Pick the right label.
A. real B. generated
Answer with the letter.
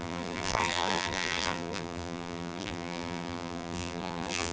B